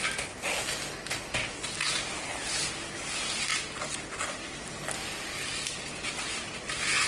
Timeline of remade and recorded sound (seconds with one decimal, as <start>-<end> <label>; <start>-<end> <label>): 0.0-7.1 recorded